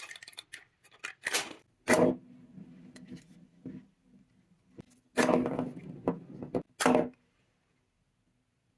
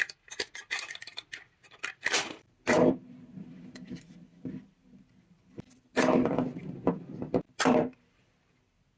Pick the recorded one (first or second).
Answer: first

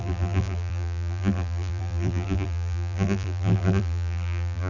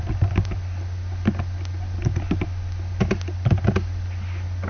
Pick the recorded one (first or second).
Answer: second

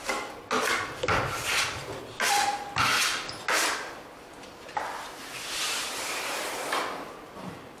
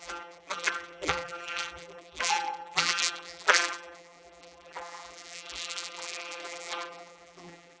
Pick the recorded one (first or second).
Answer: first